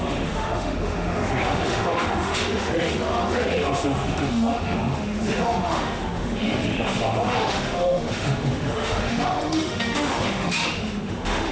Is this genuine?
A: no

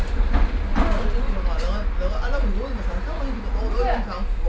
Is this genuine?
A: yes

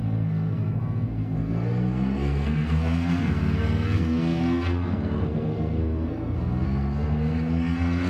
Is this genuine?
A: no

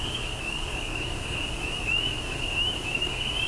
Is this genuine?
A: no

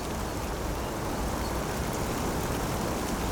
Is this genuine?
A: yes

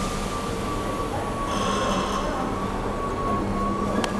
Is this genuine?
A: yes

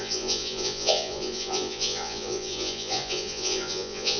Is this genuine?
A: no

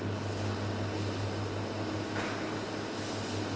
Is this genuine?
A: yes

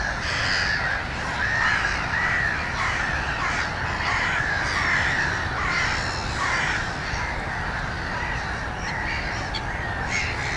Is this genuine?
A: yes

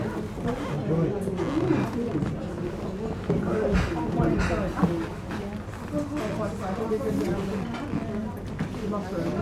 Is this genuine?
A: yes